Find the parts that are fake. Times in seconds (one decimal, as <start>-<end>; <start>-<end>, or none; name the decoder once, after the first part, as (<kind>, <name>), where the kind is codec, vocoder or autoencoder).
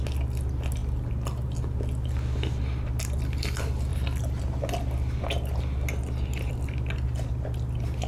none